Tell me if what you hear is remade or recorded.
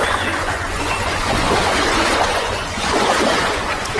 remade